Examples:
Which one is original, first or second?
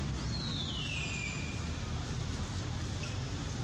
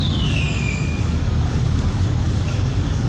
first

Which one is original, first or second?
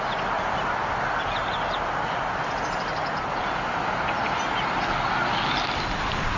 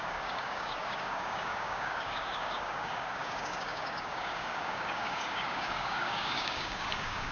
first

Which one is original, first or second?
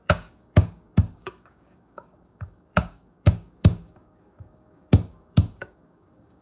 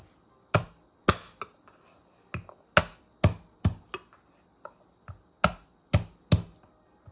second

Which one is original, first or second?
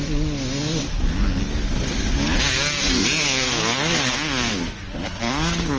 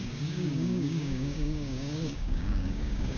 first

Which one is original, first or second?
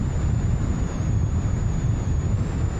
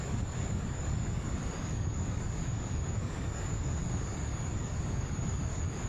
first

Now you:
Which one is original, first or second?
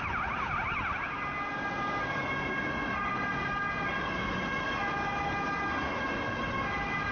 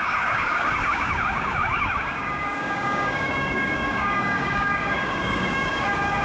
first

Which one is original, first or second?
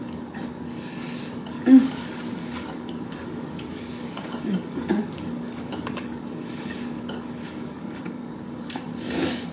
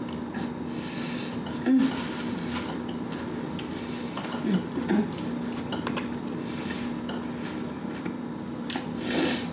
second